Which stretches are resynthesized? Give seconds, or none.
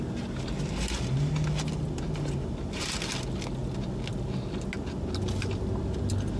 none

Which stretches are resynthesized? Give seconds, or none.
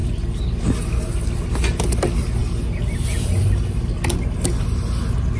none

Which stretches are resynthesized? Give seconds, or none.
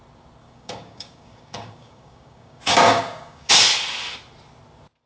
0.4-3.5 (codec, DAC)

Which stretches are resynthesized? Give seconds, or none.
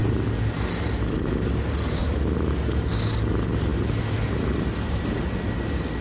2.0-2.5 (vocoder, BigVGAN v2)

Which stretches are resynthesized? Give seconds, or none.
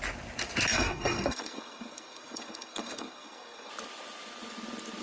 0.7-3.7 (codec, SNAC)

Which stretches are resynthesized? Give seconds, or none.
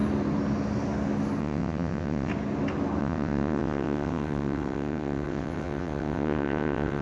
1.4-2.3 (vocoder, WaveNeXt); 3.0-7.0